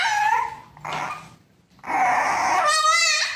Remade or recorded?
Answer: recorded